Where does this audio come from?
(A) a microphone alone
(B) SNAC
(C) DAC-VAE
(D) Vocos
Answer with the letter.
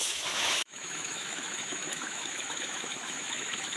C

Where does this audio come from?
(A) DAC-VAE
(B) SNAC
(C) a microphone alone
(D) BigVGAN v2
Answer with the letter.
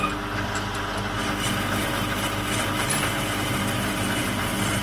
C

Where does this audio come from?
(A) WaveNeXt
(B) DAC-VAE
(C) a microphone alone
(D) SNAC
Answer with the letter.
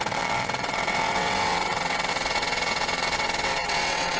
A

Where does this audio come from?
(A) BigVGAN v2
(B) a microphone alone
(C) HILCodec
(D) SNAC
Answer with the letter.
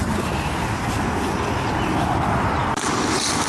B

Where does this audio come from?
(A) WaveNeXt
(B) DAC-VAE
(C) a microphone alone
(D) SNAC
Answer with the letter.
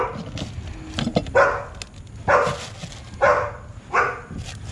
C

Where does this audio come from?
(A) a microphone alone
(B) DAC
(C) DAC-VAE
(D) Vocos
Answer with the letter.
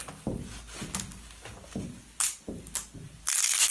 A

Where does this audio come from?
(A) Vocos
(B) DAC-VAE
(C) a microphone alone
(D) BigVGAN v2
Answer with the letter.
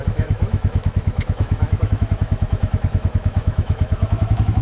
B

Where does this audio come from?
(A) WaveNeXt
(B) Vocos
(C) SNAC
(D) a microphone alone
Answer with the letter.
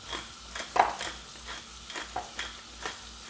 D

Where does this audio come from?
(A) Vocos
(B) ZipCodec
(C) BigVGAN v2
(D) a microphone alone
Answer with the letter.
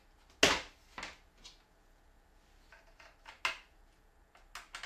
D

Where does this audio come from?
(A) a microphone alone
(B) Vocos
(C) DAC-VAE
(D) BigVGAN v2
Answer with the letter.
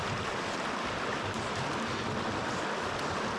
A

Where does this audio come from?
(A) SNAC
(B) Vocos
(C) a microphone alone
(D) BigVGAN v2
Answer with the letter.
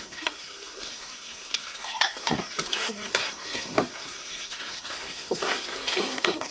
A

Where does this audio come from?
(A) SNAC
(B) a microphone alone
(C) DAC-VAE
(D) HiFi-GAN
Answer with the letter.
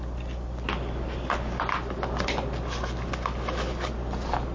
B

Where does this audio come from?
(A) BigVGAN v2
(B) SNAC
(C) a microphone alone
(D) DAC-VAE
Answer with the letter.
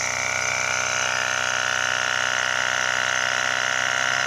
A